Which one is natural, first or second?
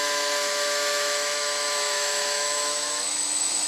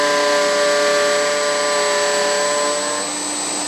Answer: second